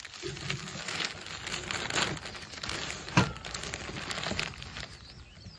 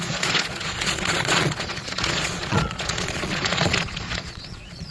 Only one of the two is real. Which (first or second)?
first